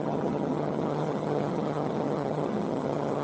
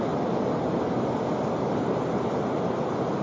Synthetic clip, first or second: first